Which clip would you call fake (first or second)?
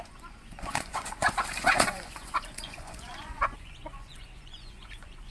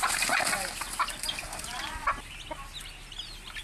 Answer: first